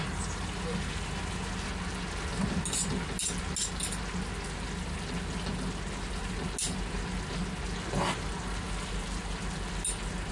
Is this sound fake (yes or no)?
no